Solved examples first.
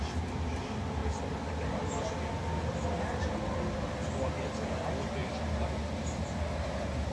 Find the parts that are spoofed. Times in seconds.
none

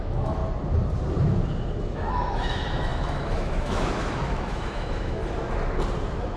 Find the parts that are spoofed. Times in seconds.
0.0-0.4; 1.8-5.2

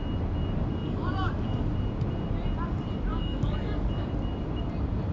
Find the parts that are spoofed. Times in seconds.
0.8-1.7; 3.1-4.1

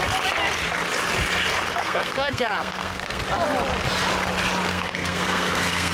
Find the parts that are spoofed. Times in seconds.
1.8-3.2; 4.7-5.9